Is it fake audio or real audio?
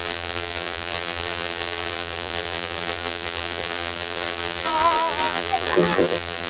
fake